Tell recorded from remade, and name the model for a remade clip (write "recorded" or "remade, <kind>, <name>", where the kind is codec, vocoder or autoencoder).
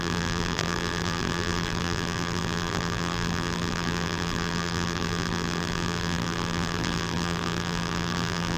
remade, vocoder, BigVGAN v2